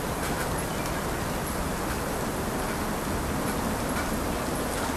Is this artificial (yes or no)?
no